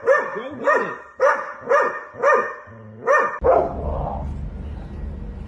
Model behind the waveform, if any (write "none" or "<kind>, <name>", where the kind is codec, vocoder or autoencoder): none